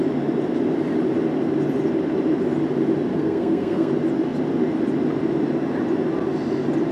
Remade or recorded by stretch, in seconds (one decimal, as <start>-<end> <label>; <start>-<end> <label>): 0.0-3.1 recorded; 3.1-3.9 remade; 3.9-6.9 recorded